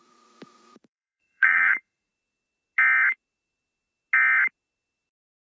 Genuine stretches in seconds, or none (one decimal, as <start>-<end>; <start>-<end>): 2.1-5.4